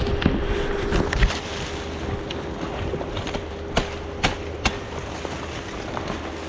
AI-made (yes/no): no